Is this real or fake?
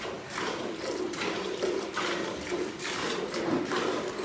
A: fake